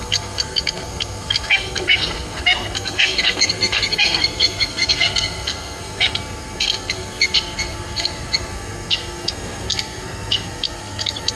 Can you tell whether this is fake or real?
fake